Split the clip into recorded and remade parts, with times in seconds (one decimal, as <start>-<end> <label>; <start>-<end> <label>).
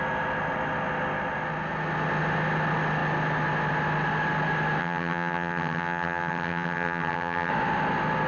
0.0-4.8 recorded; 4.8-7.5 remade; 7.5-8.3 recorded